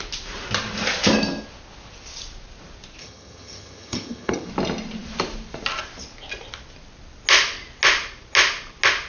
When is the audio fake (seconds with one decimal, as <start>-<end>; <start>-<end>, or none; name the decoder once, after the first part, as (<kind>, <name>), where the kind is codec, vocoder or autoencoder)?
3.0-4.5 (vocoder, HiFi-GAN)